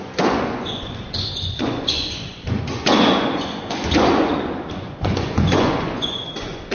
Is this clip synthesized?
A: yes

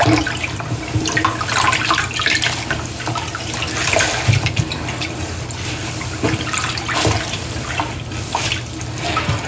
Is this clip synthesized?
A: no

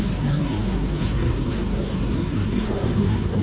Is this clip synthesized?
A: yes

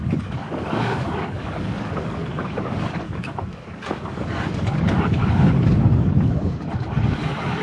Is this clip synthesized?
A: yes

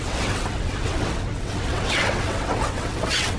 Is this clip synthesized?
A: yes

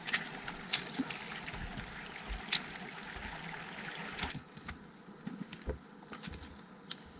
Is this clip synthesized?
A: no